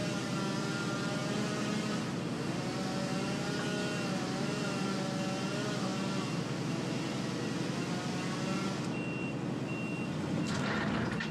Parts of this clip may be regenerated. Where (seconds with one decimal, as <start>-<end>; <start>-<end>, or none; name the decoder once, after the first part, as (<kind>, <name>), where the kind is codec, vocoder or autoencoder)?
none